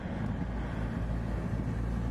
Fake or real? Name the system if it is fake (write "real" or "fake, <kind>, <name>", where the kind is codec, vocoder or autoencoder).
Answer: real